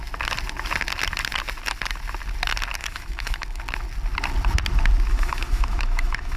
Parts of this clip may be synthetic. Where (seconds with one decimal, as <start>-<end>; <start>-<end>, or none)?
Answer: 2.8-3.6; 5.1-6.4